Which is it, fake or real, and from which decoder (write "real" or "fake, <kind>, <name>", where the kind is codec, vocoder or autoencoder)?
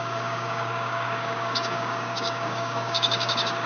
fake, codec, DAC